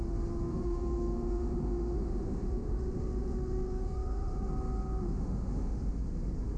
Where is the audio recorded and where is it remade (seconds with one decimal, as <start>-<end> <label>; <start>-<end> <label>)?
0.0-0.5 recorded; 0.5-4.5 remade; 4.5-5.1 recorded; 5.1-5.9 remade; 5.9-6.6 recorded